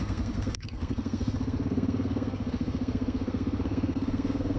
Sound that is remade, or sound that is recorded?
remade